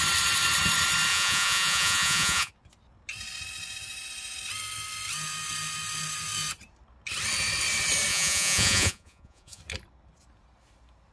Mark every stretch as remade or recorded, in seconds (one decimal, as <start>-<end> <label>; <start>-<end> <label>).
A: 0.0-1.1 recorded; 1.1-2.5 remade; 2.5-8.1 recorded; 8.1-9.6 remade; 9.6-11.1 recorded